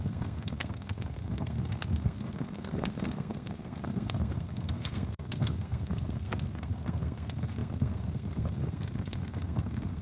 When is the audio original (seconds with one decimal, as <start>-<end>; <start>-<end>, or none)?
none